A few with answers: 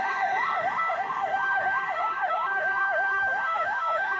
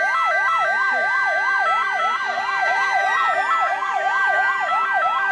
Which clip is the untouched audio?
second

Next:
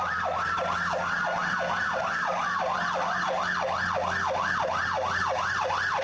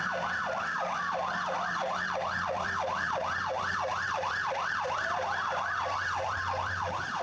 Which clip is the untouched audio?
first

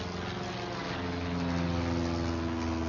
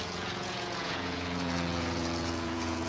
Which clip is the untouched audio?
first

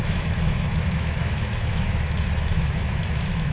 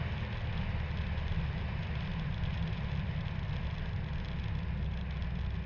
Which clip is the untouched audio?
second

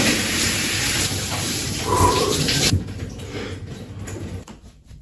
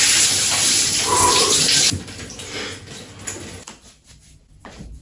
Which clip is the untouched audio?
second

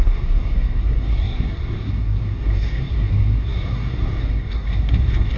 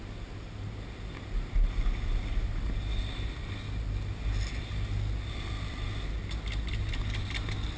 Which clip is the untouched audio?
second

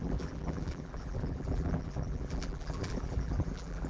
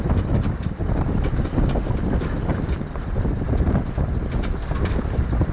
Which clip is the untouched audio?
second